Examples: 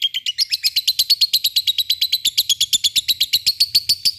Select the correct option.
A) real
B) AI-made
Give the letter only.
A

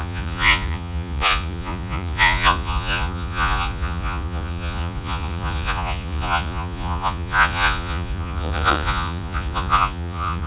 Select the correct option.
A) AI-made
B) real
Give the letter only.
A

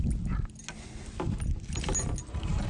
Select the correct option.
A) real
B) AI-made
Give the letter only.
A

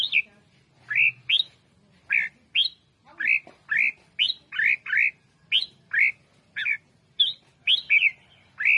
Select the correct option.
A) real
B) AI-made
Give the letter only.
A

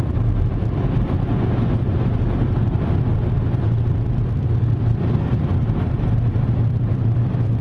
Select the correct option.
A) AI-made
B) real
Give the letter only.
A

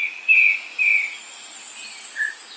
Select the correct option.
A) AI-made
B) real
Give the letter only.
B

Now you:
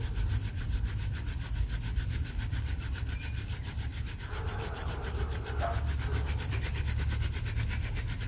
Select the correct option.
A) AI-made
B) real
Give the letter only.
B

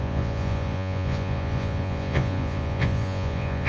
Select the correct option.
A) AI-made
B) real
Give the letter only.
A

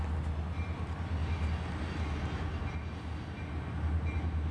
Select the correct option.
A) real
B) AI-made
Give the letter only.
A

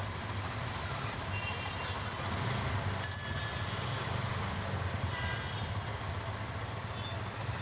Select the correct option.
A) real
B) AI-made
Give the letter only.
A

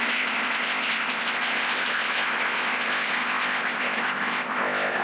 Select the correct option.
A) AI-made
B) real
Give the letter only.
A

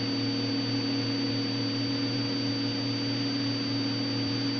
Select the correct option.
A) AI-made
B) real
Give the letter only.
B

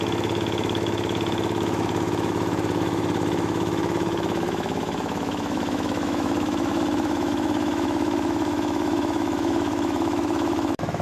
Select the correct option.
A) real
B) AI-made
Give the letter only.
B